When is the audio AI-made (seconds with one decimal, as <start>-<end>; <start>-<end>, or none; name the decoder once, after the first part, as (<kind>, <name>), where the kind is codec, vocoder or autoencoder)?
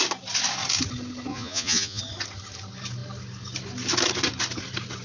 1.3-2.0 (vocoder, Vocos)